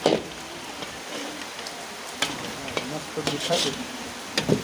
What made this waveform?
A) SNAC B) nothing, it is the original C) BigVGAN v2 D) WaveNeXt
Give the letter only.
C